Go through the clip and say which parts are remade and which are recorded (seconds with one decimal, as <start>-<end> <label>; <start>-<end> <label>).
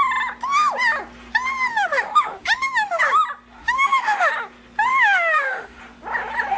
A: 0.0-1.7 recorded; 1.7-3.0 remade; 3.0-3.6 recorded; 3.6-4.3 remade; 4.3-4.9 recorded; 4.9-5.8 remade; 5.8-6.6 recorded